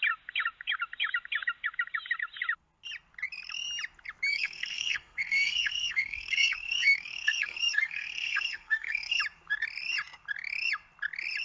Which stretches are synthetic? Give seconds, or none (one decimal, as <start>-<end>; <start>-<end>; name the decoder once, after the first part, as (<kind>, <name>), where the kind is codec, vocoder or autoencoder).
4.3-9.2 (codec, SNAC)